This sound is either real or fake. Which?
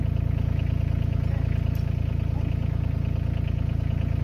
real